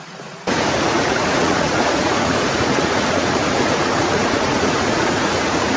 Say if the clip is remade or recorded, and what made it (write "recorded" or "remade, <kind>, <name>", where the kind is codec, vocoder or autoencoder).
remade, vocoder, Vocos